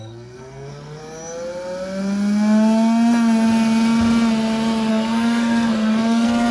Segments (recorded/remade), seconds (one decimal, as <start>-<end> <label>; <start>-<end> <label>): 0.0-1.0 remade; 1.0-4.9 recorded; 4.9-6.5 remade